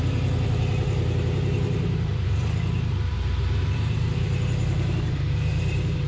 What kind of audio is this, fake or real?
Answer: fake